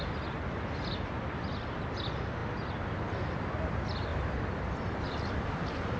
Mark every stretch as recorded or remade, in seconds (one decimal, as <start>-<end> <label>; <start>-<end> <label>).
0.0-4.1 recorded; 4.1-6.0 remade